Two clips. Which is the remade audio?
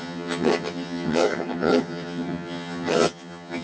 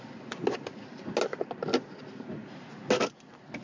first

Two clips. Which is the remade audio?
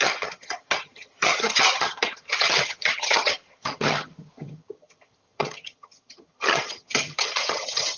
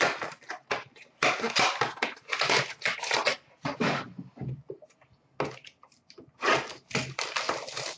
first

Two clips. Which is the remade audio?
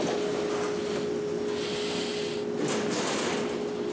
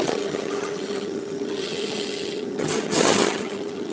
second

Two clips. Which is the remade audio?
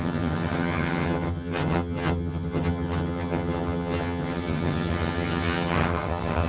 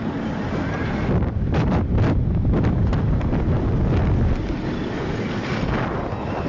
first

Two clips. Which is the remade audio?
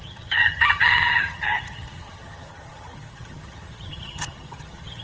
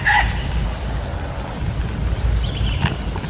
first